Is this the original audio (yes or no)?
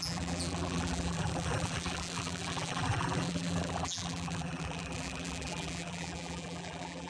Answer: no